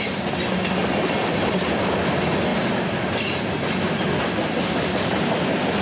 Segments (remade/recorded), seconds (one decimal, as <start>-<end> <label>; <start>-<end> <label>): 0.0-5.8 recorded